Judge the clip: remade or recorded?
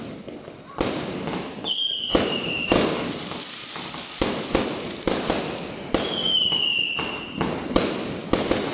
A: recorded